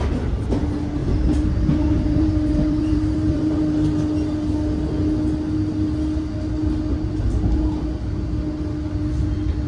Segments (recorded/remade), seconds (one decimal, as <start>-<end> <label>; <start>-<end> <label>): 0.0-1.0 recorded; 1.0-3.6 remade; 3.6-9.7 recorded